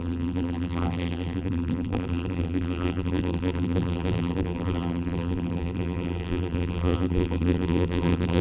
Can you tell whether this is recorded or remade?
remade